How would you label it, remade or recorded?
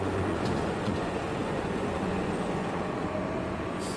remade